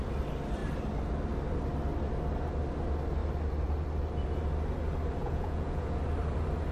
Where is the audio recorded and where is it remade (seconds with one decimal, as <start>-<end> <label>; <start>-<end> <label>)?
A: 0.0-5.2 recorded; 5.2-6.0 remade; 6.0-6.7 recorded

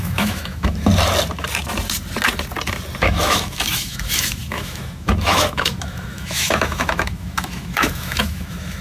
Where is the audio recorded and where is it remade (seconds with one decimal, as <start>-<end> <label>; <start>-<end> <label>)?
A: 0.0-0.9 remade; 0.9-3.0 recorded; 3.0-8.8 remade